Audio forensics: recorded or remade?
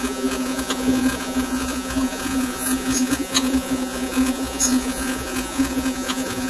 remade